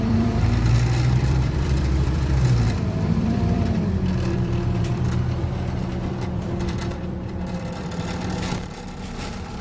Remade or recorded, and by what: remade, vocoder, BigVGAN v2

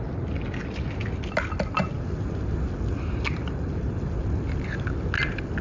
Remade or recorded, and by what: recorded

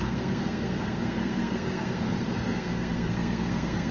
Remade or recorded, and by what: remade, codec, SNAC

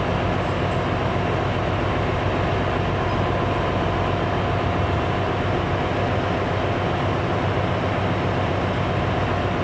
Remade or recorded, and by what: recorded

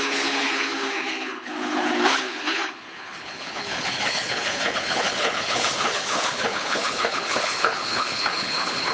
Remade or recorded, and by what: remade, codec, HILCodec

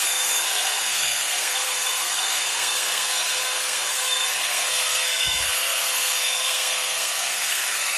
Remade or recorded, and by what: remade, codec, SNAC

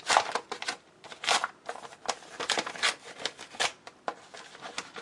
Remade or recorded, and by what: recorded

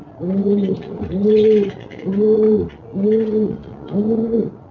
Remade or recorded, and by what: remade, vocoder, Vocos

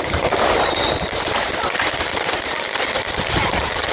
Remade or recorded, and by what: recorded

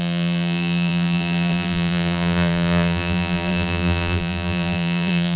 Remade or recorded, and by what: remade, vocoder, BigVGAN v2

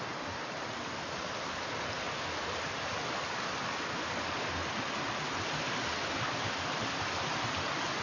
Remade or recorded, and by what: recorded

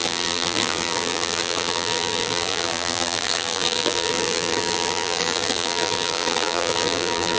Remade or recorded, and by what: remade, vocoder, BigVGAN v2